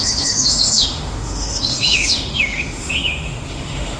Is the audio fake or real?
fake